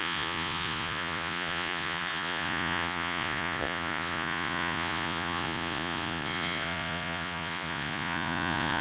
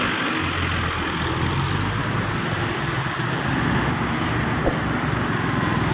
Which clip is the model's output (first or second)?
first